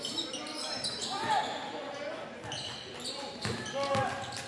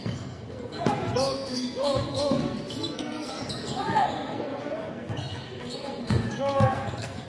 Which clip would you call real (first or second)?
first